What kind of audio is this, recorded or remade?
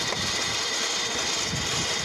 recorded